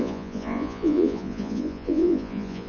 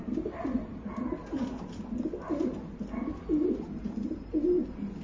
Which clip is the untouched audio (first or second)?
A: second